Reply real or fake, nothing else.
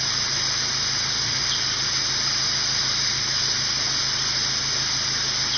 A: real